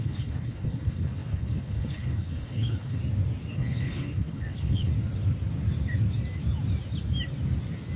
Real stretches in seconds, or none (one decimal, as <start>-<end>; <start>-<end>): 3.0-3.5; 4.9-8.0

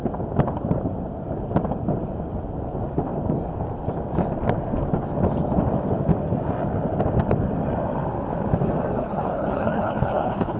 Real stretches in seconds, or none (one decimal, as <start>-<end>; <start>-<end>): 0.0-9.0